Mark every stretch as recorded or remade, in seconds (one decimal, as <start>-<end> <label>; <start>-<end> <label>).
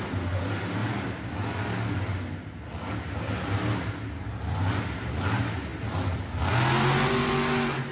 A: 0.0-7.9 recorded